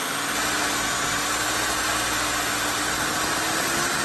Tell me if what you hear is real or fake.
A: real